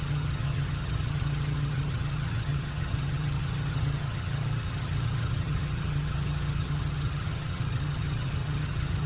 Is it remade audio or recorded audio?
remade